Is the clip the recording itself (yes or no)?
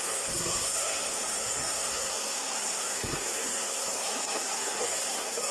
no